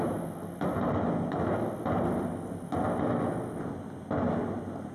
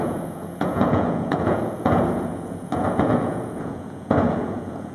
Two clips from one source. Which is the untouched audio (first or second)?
first